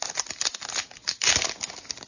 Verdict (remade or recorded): recorded